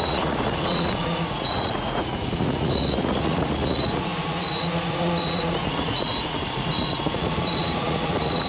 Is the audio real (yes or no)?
no